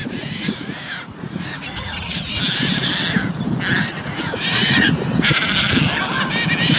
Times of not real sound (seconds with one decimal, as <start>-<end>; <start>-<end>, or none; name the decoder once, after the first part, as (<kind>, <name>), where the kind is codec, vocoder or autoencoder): 0.0-2.4 (vocoder, Vocos); 3.9-5.0